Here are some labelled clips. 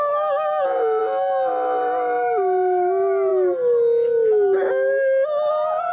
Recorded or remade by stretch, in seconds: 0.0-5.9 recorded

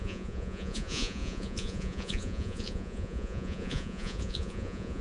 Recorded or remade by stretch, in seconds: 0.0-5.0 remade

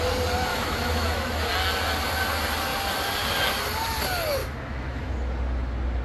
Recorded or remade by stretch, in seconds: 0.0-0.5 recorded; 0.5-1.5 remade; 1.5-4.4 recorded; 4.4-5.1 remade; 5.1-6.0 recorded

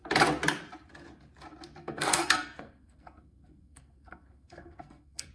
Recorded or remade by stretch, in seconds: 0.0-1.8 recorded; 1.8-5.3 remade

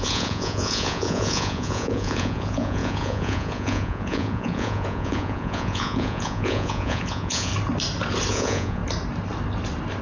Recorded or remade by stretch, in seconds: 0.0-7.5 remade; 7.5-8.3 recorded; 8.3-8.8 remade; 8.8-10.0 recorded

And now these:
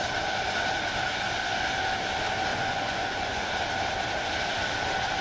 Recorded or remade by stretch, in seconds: 0.0-2.5 recorded; 2.5-3.5 remade; 3.5-5.2 recorded

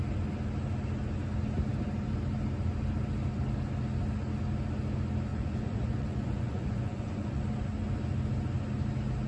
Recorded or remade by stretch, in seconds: 0.0-5.3 recorded; 5.3-7.4 remade; 7.4-9.3 recorded

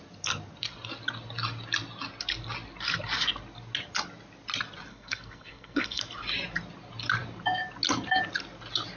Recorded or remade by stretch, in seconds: 0.0-4.9 recorded; 4.9-6.0 remade; 6.0-9.0 recorded